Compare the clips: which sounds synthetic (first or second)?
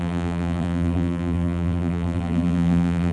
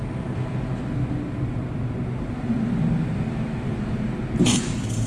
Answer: first